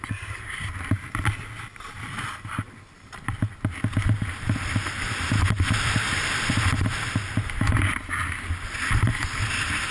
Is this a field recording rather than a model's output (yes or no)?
yes